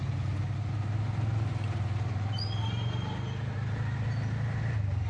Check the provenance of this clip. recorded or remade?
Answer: recorded